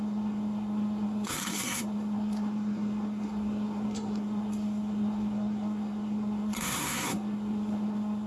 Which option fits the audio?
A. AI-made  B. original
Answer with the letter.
A